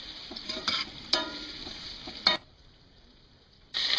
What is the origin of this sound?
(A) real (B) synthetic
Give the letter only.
B